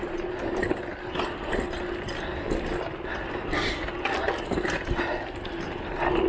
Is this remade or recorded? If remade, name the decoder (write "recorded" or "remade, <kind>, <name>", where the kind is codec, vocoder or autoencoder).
recorded